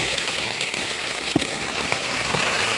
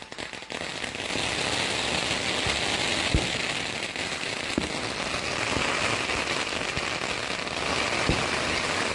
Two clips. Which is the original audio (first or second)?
second